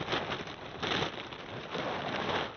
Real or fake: real